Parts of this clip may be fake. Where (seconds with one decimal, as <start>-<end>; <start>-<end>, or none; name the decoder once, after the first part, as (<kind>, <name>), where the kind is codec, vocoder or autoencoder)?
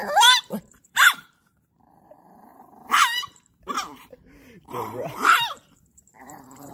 0.0-6.7 (vocoder, BigVGAN v2)